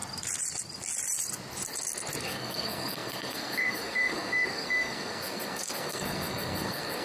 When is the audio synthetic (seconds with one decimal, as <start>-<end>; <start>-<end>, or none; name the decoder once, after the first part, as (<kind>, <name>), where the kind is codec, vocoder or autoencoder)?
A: 2.2-7.0 (codec, SNAC)